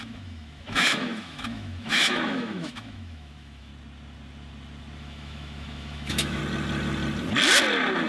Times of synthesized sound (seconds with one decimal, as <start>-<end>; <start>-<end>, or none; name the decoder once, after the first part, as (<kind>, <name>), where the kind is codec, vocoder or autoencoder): 0.0-3.7 (autoencoder, DAC-VAE); 5.0-6.4